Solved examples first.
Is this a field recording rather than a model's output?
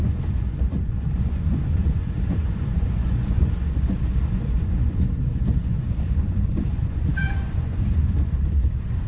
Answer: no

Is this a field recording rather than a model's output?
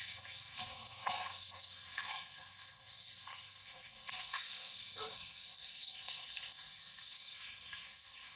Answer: no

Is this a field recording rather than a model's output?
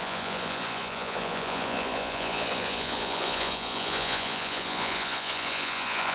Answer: no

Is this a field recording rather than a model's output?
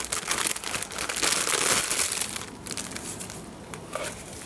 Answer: yes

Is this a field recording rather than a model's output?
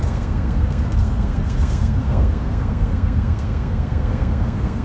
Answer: no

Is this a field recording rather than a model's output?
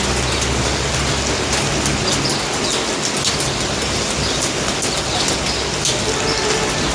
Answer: yes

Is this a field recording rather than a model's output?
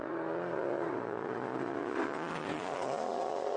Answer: no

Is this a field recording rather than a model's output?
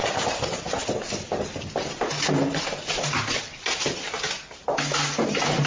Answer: yes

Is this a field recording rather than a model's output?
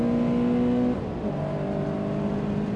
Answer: yes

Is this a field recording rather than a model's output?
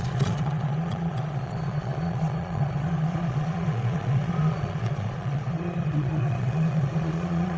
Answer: no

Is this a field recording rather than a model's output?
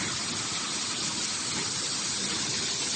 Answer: yes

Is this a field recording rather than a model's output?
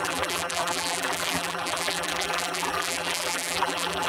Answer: no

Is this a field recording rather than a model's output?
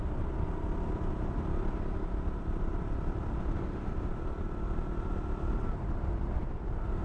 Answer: yes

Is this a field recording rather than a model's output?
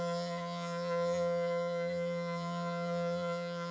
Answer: no